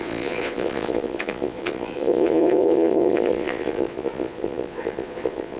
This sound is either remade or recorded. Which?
remade